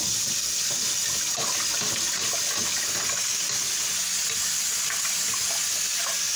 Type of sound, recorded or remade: recorded